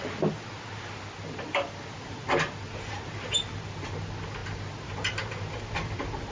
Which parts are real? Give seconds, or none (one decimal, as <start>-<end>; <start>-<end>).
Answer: 0.0-6.3